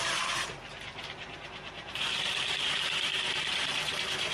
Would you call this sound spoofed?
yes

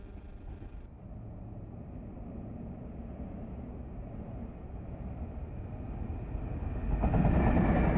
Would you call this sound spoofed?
no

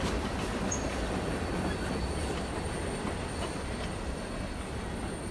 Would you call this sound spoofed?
no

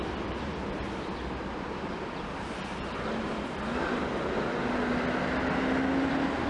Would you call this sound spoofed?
no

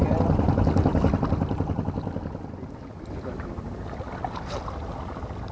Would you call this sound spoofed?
no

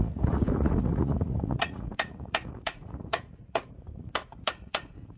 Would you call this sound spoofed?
yes